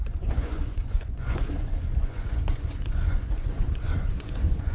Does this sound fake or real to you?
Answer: fake